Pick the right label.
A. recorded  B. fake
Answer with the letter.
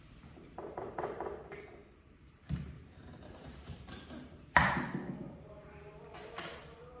B